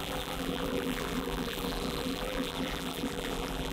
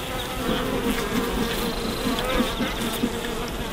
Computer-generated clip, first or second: first